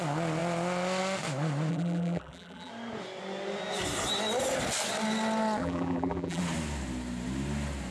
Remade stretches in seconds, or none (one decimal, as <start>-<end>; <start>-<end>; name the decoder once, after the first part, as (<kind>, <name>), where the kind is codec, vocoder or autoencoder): 1.7-2.7 (vocoder, BigVGAN v2); 5.6-6.4